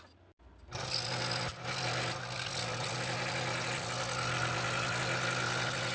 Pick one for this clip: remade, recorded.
recorded